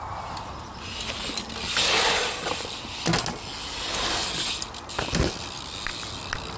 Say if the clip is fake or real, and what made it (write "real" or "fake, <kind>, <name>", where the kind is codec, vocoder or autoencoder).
real